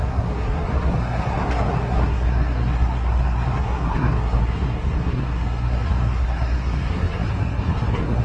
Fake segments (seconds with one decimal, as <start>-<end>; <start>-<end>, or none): 0.0-8.2